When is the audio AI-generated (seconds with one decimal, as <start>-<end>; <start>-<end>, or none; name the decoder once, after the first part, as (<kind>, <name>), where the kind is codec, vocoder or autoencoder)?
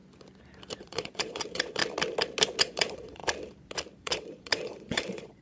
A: 0.8-1.8 (vocoder, Vocos); 2.6-3.2; 4.0-5.4